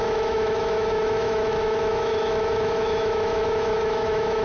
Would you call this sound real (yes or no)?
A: no